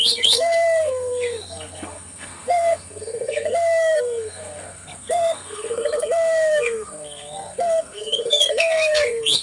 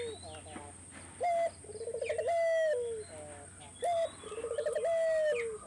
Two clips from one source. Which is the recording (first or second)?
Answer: second